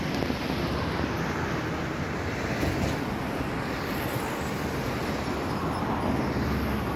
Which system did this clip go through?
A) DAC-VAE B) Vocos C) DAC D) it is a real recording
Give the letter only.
D